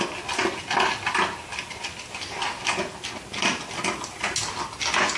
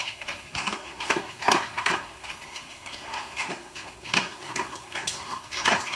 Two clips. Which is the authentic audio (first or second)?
first